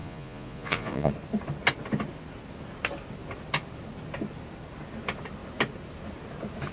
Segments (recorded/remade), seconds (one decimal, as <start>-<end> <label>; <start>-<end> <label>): 0.0-1.1 remade; 1.1-6.7 recorded